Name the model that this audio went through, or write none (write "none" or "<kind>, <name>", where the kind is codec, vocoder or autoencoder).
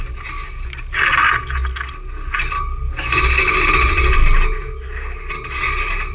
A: none